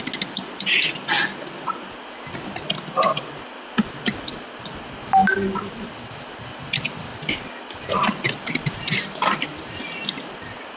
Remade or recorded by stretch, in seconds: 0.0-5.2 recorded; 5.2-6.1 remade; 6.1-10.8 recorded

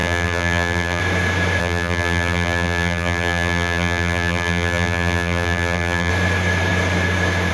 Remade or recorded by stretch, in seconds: 0.0-1.0 remade; 1.0-1.6 recorded; 1.6-6.1 remade; 6.1-7.5 recorded

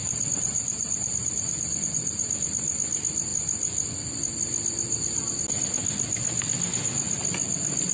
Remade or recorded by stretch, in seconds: 0.0-2.3 remade; 2.3-7.9 recorded

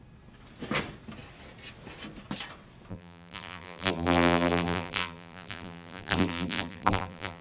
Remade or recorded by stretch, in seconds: 0.0-2.9 recorded; 2.9-7.4 remade

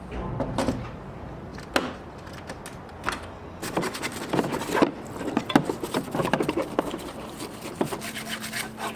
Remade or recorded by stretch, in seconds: 0.0-1.5 recorded; 1.5-2.4 remade; 2.4-9.0 recorded

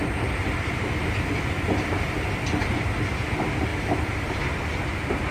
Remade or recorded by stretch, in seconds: 0.0-1.0 recorded; 1.0-2.2 remade; 2.2-5.3 recorded